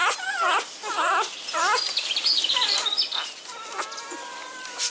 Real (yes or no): yes